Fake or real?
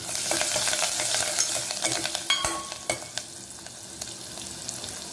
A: real